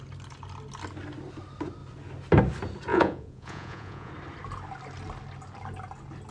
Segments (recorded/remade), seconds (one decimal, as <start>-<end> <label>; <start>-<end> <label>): 0.0-2.9 recorded; 2.9-4.1 remade; 4.1-6.3 recorded